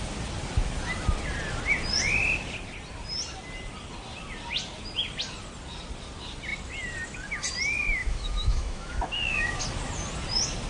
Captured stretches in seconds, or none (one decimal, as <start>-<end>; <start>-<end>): 0.0-8.0; 9.6-10.7